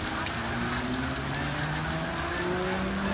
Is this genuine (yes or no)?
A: yes